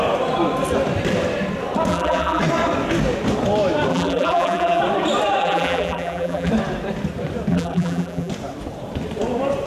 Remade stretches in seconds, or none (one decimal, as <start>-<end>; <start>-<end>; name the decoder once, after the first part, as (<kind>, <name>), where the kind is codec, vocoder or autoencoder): 1.9-2.4 (vocoder, BigVGAN v2); 3.9-4.8; 5.4-6.5; 7.5-8.3